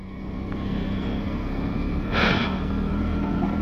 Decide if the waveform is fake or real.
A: fake